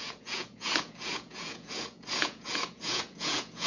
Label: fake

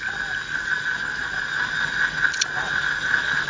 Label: real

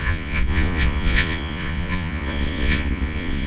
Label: fake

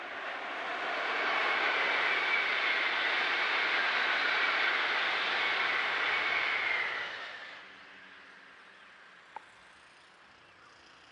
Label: real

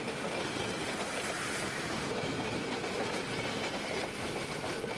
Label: real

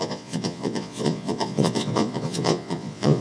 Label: fake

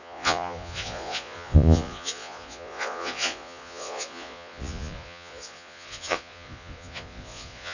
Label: fake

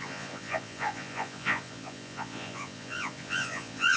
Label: fake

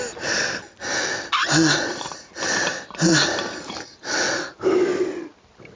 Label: real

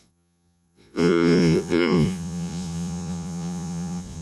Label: fake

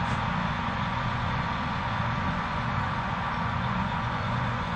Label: fake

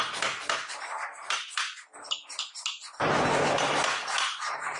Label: real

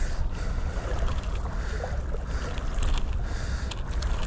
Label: real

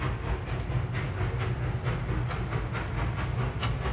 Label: real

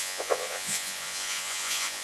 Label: fake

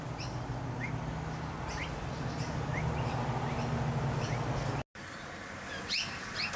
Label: real